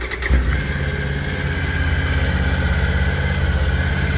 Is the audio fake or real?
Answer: real